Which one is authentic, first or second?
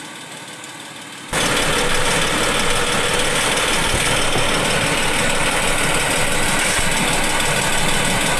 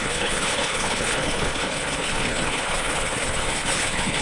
first